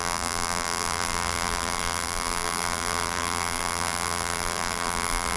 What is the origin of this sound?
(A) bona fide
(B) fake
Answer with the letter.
B